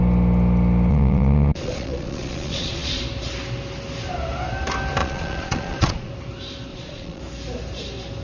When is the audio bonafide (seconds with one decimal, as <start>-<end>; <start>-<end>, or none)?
0.0-0.9; 3.0-5.0; 6.1-6.7; 7.2-8.2